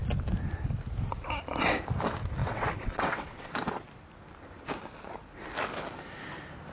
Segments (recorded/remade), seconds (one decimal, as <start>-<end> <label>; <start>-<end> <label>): 0.0-2.4 recorded; 2.4-3.5 remade; 3.5-6.7 recorded